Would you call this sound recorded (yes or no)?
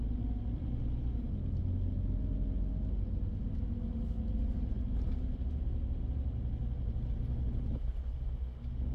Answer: yes